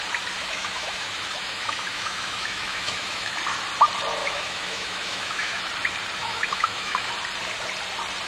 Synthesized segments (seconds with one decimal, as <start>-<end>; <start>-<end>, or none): 0.4-3.4; 4.2-5.6; 6.2-7.1

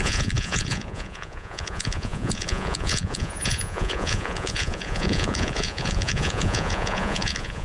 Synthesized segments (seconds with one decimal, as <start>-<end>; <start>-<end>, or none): 0.0-7.6

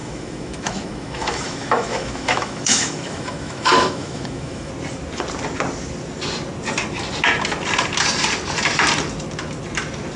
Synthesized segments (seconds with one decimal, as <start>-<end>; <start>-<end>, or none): 0.0-4.7